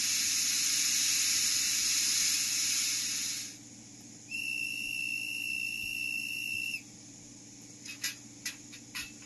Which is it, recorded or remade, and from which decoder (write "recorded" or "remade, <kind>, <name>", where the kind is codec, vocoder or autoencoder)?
recorded